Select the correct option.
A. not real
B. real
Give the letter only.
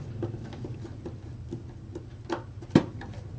B